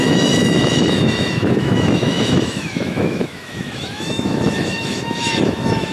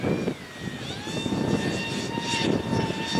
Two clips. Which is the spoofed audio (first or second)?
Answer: first